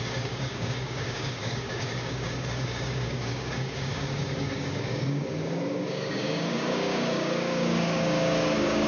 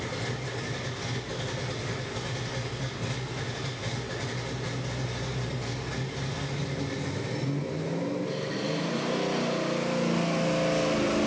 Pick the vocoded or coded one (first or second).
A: first